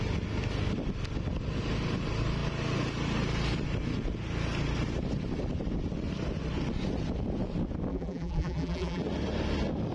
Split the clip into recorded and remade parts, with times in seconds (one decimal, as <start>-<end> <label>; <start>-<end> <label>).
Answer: 0.0-7.9 recorded; 7.9-9.0 remade; 9.0-9.9 recorded